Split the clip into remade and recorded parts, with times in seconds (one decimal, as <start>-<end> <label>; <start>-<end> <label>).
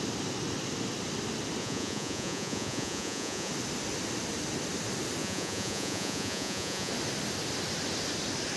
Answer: 0.0-1.6 recorded; 1.6-3.5 remade; 3.5-5.2 recorded; 5.2-6.9 remade; 6.9-8.6 recorded